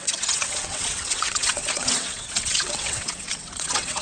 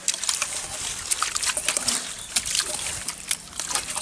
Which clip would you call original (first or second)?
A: second